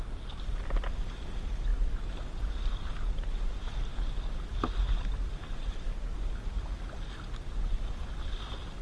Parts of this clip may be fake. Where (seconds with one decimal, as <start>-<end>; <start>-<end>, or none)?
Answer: none